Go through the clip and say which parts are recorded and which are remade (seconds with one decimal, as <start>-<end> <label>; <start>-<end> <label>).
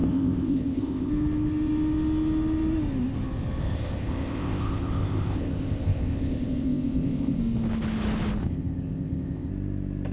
0.0-1.1 remade; 1.1-3.6 recorded; 3.6-7.4 remade; 7.4-8.4 recorded; 8.4-9.5 remade; 9.5-10.1 recorded